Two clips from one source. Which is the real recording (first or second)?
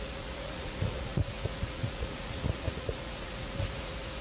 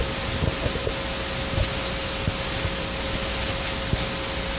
second